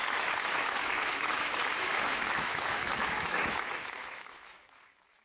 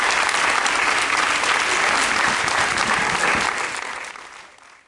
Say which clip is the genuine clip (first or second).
second